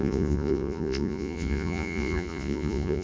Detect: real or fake fake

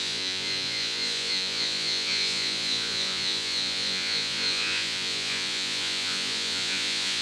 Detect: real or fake fake